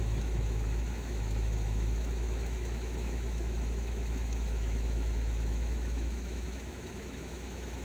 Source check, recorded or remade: remade